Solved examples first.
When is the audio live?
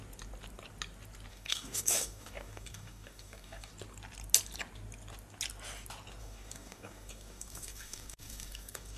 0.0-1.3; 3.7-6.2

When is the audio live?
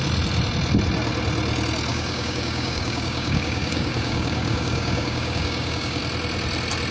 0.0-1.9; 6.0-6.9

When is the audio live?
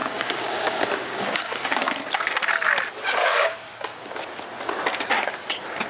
1.9-3.2; 4.1-5.9